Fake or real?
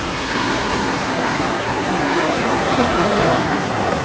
fake